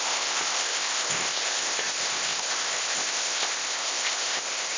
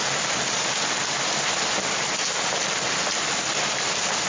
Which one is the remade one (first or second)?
first